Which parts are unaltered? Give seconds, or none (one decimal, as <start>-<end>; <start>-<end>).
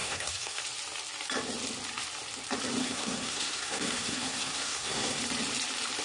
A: 0.6-2.8; 5.2-6.0